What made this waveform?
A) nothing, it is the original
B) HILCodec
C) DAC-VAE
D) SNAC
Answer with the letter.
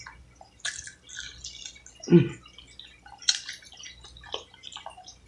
A